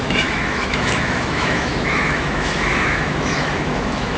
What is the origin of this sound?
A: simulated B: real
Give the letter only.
A